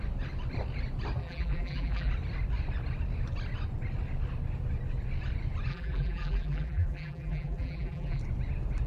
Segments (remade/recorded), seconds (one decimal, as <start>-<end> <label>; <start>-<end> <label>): 0.0-1.2 recorded; 1.2-2.1 remade; 2.1-5.7 recorded; 5.7-8.2 remade; 8.2-8.9 recorded